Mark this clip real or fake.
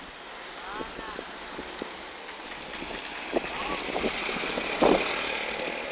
real